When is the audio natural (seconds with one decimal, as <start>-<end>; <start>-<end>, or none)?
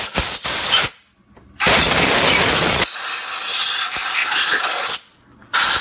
0.0-5.8